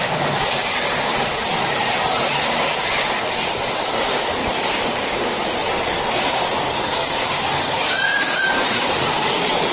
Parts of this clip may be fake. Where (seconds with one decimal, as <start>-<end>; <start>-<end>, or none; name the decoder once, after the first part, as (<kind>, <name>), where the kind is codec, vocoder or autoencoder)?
4.4-8.5 (codec, DAC)